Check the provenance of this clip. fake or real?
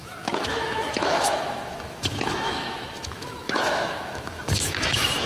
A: fake